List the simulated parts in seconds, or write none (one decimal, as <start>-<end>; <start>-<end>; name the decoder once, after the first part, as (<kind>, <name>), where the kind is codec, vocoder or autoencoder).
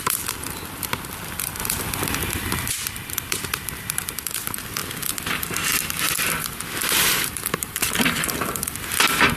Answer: 0.0-4.8 (vocoder, BigVGAN v2); 6.0-9.4